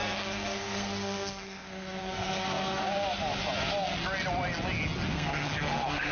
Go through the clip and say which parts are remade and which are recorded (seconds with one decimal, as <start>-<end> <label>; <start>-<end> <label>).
0.0-2.8 remade; 2.8-5.1 recorded; 5.1-6.1 remade